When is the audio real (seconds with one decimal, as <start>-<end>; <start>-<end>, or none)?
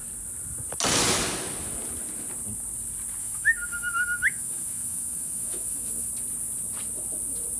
0.0-3.2; 6.1-7.6